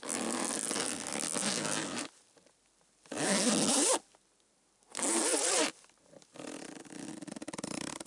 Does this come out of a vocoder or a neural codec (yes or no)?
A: no